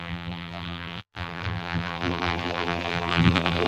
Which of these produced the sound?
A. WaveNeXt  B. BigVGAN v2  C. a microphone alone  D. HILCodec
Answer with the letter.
B